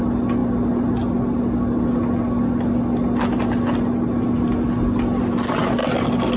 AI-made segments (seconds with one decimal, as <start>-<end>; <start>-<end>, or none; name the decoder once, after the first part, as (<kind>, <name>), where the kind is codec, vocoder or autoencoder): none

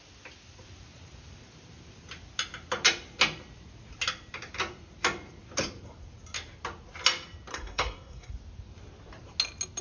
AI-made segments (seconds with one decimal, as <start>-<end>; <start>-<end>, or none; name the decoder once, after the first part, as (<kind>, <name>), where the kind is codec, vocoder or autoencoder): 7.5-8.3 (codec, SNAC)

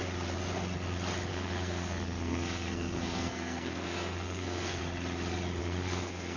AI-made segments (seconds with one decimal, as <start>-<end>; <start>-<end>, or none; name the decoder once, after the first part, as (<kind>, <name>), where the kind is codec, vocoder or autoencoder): 1.3-4.8 (codec, SNAC); 5.6-6.4

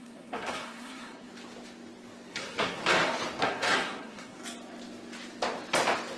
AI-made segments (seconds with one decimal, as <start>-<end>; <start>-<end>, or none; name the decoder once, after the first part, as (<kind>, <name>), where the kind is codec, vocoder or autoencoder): 0.0-1.3 (codec, SNAC); 2.3-2.8; 3.4-4.4